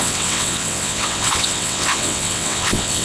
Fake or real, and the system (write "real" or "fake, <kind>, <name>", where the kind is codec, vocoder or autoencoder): fake, vocoder, WaveNeXt